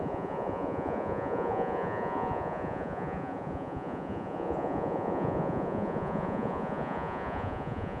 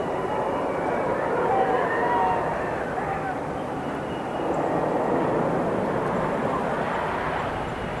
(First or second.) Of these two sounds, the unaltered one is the second